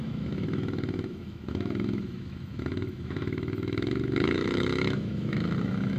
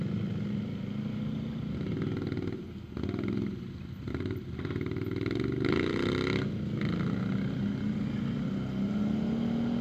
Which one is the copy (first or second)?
first